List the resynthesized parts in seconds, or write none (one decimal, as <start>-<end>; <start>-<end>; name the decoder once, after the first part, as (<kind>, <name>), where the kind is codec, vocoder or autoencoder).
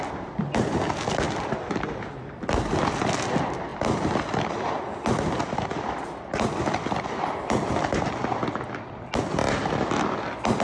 none